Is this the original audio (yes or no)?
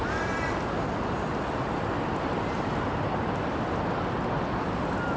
yes